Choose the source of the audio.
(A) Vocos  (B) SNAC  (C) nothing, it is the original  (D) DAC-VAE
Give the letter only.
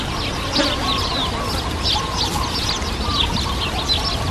C